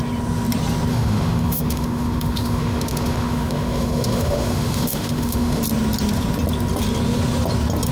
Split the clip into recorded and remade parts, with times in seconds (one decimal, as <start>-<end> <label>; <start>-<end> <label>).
0.0-0.9 recorded; 0.9-5.6 remade; 5.6-7.9 recorded